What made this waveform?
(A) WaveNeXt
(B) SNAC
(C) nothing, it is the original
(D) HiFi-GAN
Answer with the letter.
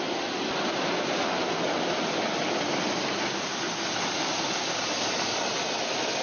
C